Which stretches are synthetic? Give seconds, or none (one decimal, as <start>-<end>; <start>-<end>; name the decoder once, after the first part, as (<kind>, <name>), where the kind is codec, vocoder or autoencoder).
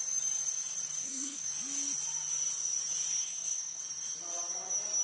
1.0-1.5 (codec, SNAC); 3.2-3.8